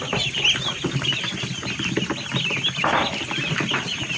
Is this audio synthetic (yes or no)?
no